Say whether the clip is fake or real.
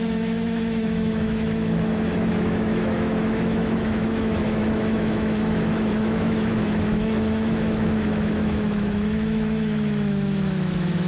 fake